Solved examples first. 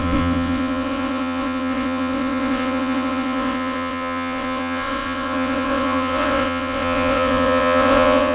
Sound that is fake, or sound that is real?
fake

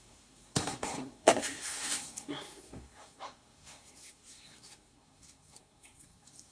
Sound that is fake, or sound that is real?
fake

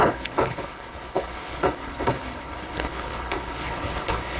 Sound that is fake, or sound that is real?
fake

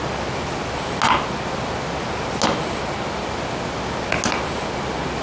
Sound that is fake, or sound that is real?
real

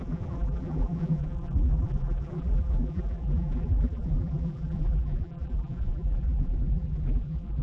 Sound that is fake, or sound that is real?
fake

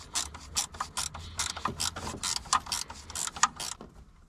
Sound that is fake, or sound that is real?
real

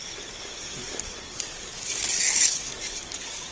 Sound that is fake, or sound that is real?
fake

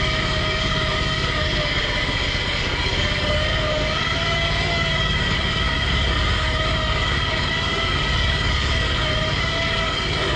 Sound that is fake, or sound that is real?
fake